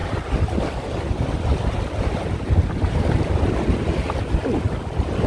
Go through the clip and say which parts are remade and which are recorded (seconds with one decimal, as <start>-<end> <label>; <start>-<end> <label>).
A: 0.0-5.3 recorded